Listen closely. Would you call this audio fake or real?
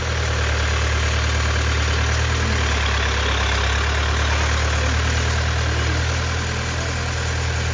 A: real